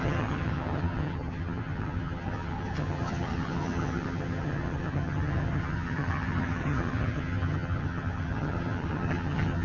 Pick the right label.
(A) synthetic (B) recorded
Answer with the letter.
A